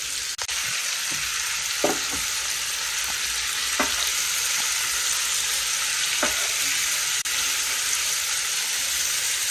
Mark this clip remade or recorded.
recorded